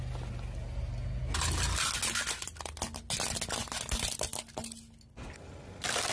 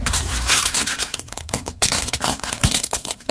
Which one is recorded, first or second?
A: first